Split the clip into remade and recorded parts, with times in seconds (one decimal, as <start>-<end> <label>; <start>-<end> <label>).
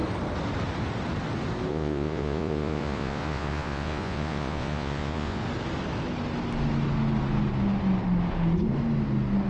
0.0-1.7 recorded; 1.7-5.4 remade; 5.4-9.5 recorded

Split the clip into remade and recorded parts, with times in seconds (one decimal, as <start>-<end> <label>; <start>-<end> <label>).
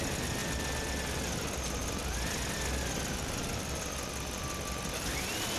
0.0-5.6 recorded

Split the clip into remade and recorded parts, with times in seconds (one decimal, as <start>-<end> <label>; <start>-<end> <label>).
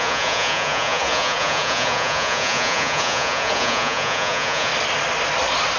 0.0-4.7 remade; 4.7-5.8 recorded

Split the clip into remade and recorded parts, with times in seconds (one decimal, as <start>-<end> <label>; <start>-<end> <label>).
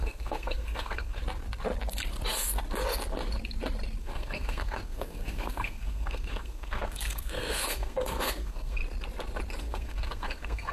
0.0-1.2 remade; 1.2-4.0 recorded; 4.0-8.8 remade; 8.8-9.6 recorded; 9.6-10.7 remade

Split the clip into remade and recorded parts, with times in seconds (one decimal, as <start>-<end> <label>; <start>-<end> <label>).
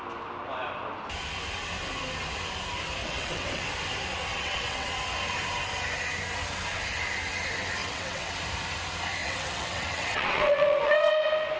0.0-3.0 recorded; 3.0-3.6 remade; 3.6-4.3 recorded; 4.3-4.9 remade; 4.9-7.8 recorded; 7.8-8.3 remade; 8.3-9.2 recorded; 9.2-11.1 remade; 11.1-11.6 recorded